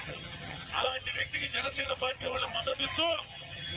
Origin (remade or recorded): remade